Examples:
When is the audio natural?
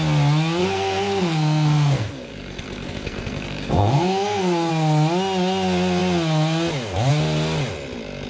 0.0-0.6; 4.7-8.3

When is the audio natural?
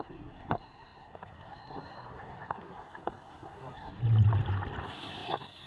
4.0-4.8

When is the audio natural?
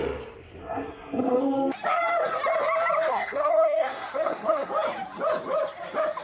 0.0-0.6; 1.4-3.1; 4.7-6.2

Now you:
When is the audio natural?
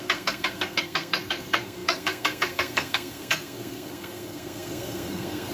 none